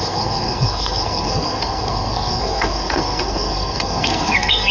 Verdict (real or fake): fake